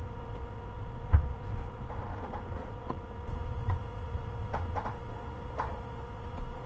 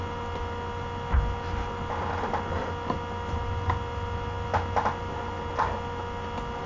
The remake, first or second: first